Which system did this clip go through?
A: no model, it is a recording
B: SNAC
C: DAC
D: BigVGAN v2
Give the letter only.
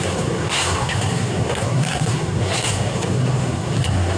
B